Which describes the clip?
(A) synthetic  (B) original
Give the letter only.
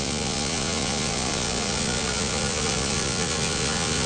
A